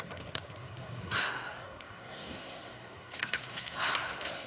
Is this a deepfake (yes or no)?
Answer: yes